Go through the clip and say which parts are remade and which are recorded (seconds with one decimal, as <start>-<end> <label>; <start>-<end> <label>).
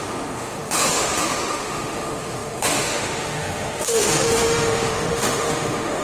0.0-6.0 remade